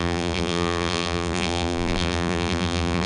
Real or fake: fake